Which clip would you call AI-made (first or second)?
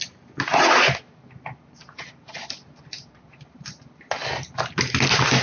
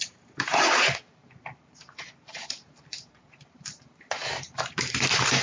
second